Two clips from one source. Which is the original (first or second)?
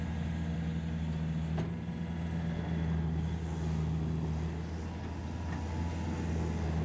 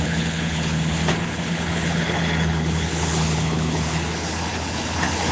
first